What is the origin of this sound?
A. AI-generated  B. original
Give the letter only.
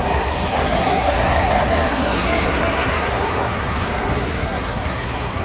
A